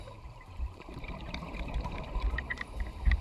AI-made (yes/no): yes